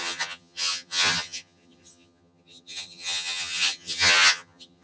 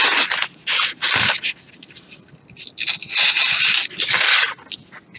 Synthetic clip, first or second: first